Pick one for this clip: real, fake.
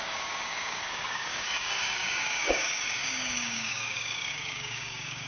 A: fake